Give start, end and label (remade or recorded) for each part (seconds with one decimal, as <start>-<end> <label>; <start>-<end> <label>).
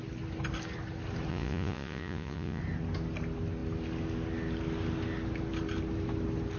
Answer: 0.0-1.3 recorded; 1.3-2.6 remade; 2.6-6.6 recorded